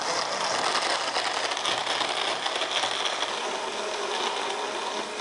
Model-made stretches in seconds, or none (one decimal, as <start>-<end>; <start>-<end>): none